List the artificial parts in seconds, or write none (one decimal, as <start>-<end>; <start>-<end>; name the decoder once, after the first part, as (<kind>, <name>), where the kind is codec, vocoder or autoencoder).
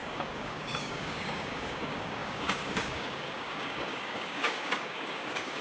0.0-5.6 (codec, DAC)